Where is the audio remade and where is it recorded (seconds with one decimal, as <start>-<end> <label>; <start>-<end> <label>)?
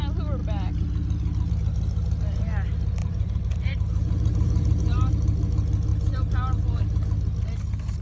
0.0-3.0 recorded; 3.0-5.1 remade; 5.1-8.0 recorded